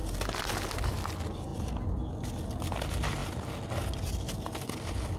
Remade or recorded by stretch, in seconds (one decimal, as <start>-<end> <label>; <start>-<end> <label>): 0.0-0.5 remade; 0.5-5.2 recorded